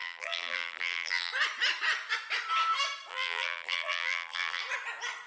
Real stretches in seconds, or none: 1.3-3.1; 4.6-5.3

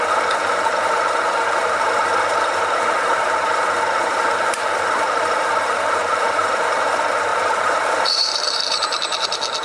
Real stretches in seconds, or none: none